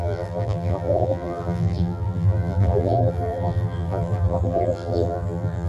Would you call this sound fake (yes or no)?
yes